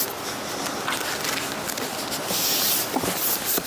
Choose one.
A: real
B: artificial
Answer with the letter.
A